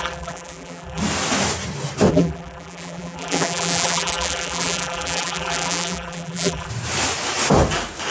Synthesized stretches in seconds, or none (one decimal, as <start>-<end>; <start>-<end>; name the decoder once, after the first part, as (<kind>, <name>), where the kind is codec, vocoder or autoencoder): 0.0-1.0 (vocoder, BigVGAN v2); 2.1-6.7